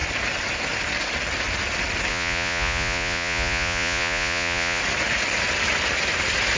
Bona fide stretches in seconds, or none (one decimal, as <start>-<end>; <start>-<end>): 0.0-2.1; 4.8-6.6